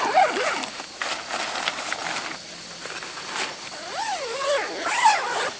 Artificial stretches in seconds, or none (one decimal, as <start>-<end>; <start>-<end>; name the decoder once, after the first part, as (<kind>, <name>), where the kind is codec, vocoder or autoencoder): none